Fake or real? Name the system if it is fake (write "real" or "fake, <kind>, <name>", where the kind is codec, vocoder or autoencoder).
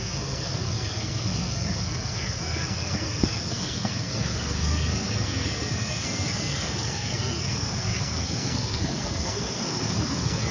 fake, codec, SNAC